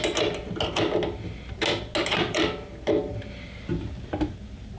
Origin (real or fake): real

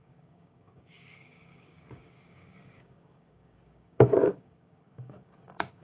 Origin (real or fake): fake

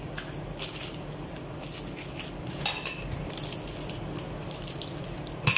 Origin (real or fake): real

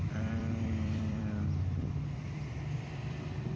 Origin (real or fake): fake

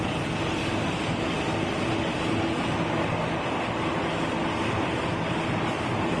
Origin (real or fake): real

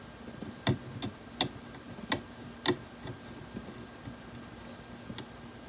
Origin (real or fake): real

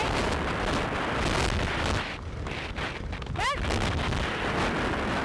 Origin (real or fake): real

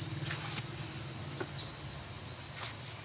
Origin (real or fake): real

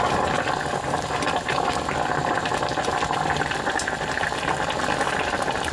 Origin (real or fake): real